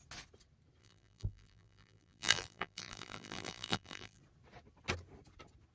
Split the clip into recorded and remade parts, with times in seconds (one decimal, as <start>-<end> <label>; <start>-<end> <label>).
0.0-0.8 recorded; 0.8-4.2 remade; 4.2-5.7 recorded